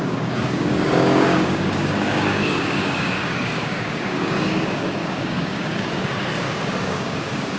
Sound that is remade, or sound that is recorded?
remade